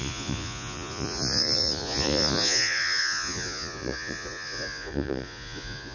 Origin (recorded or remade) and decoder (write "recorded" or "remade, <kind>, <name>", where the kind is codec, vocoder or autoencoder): remade, vocoder, Vocos